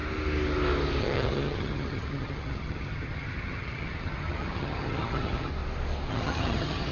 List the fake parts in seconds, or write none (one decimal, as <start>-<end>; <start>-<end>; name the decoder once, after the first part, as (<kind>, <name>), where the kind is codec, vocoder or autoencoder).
1.0-5.5 (vocoder, HiFi-GAN); 6.1-6.9